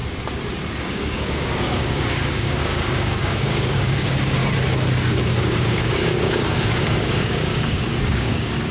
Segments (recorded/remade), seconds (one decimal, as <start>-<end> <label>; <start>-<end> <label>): 0.0-0.8 recorded; 0.8-4.4 remade; 4.4-5.1 recorded; 5.1-8.7 remade